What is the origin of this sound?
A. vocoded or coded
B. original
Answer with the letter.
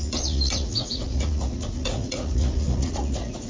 A